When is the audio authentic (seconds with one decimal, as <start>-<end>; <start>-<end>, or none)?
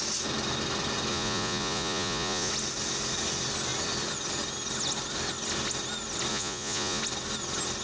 0.0-1.1; 2.5-6.3; 7.0-7.8